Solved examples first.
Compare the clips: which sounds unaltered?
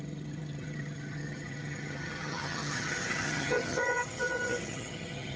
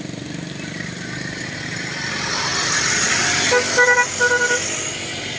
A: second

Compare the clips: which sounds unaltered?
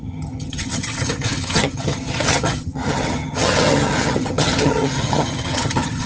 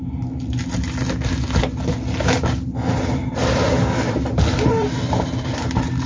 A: second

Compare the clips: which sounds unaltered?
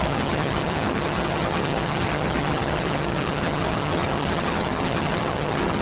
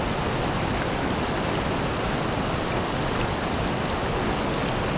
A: second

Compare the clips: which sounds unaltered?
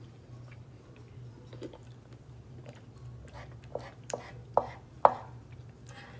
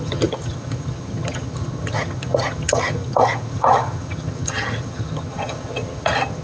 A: first